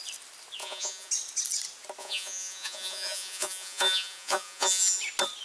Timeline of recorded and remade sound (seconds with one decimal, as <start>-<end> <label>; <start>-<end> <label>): 0.0-0.6 recorded; 0.6-1.1 remade; 1.1-2.0 recorded; 2.0-5.0 remade; 5.0-5.4 recorded